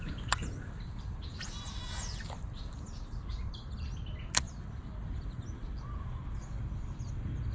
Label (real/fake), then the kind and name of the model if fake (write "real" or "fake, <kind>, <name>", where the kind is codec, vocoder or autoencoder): real